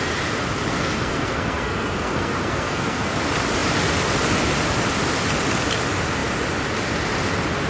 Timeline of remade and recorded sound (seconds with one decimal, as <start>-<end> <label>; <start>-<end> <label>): 0.0-0.7 recorded; 0.7-3.1 remade; 3.1-7.7 recorded